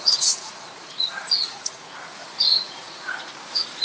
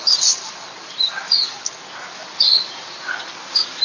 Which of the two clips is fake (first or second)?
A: first